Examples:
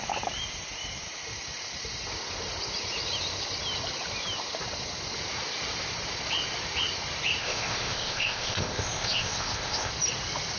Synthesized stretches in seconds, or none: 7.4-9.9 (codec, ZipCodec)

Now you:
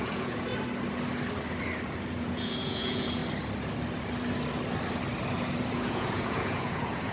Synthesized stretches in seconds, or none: 0.0-0.5 (vocoder, Vocos); 2.2-3.2; 5.7-7.1

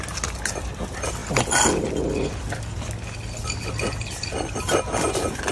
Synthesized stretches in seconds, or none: none

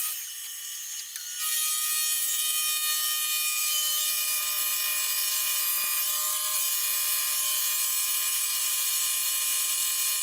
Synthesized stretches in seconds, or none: 3.6-4.4 (vocoder, BigVGAN v2); 8.3-9.0

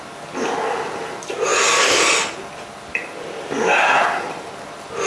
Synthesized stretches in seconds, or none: none

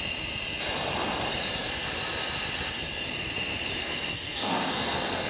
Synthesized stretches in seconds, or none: 3.8-5.3 (codec, SNAC)